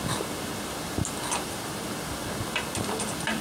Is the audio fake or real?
real